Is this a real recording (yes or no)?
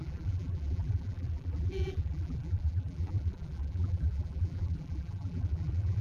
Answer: no